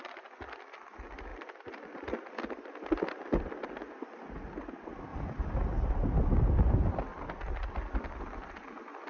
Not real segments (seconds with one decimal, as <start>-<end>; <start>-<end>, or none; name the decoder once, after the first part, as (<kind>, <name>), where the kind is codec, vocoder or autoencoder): 1.3-3.5 (vocoder, BigVGAN v2); 5.1-5.9; 7.1-8.5